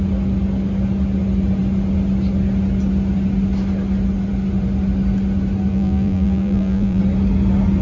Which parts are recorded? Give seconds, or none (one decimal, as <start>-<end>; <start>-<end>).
0.0-5.7; 7.0-7.8